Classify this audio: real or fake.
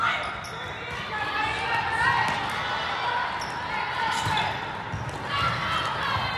real